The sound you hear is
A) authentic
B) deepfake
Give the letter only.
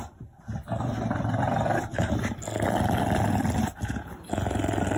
A